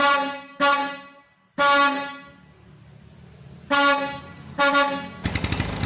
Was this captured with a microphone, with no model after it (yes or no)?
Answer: yes